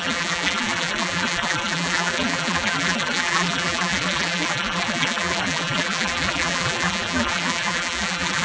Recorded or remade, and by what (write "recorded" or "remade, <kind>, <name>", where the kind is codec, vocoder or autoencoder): remade, vocoder, BigVGAN v2